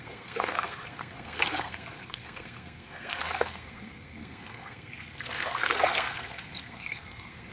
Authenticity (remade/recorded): remade